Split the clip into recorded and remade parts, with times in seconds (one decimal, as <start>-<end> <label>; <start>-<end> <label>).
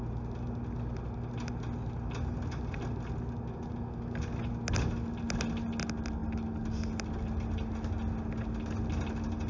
0.0-9.5 recorded